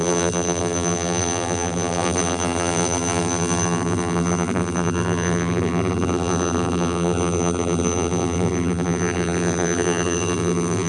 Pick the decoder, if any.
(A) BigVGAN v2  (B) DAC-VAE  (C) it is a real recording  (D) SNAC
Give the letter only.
A